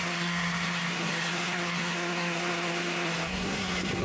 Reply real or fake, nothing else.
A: fake